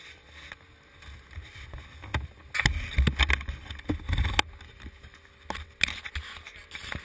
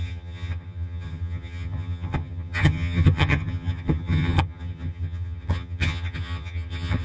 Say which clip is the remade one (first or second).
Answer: second